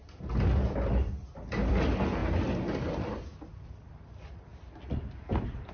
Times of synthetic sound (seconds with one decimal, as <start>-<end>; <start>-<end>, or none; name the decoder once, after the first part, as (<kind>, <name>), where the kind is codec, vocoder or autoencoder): none